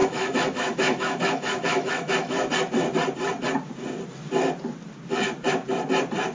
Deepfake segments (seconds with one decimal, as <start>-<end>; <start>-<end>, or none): 0.0-2.5